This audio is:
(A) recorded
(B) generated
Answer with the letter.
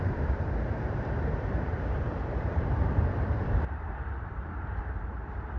B